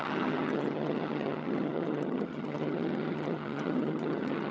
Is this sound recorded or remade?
remade